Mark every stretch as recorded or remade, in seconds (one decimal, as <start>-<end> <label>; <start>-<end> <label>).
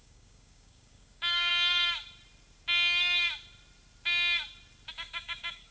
0.0-1.5 remade; 1.5-4.9 recorded; 4.9-5.7 remade